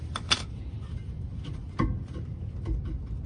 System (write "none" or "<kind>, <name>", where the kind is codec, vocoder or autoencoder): none